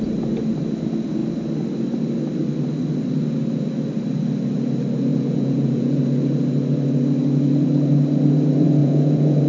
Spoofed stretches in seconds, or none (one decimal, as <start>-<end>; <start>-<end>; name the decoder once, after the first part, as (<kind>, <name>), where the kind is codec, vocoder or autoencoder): 5.1-6.0 (vocoder, Vocos); 8.8-9.5